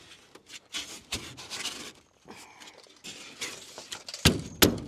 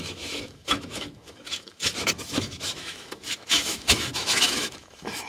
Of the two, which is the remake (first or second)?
second